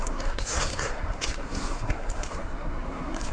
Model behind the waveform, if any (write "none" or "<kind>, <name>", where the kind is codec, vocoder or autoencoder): codec, SNAC